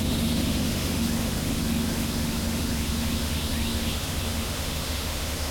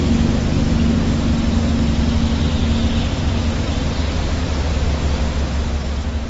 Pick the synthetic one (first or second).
first